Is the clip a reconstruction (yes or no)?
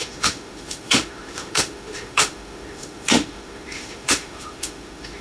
yes